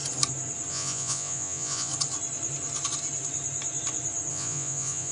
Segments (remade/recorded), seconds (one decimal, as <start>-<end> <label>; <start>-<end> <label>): 0.0-0.7 recorded; 0.7-1.9 remade; 1.9-4.3 recorded; 4.3-5.1 remade